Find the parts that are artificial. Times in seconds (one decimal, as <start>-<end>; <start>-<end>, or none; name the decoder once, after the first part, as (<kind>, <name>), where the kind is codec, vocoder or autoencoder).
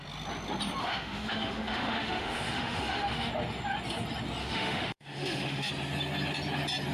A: 0.8-3.3 (autoencoder, DAC-VAE); 4.4-5.7